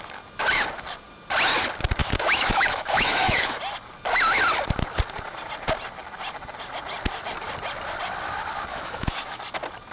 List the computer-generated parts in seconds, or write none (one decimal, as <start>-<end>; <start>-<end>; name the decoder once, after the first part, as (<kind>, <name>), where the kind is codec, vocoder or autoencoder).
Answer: 2.0-3.6 (autoencoder, DAC-VAE); 8.7-9.4